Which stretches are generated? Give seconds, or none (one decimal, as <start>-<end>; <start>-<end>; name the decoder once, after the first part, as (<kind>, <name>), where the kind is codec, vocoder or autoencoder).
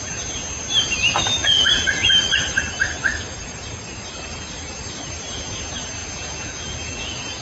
1.4-2.1 (vocoder, Vocos); 6.0-7.4